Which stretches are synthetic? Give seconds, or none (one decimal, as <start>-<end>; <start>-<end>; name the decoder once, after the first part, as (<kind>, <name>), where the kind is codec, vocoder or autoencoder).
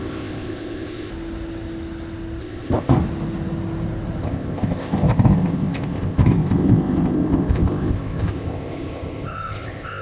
0.0-1.1 (codec, ZipCodec); 2.4-3.0; 4.2-10.0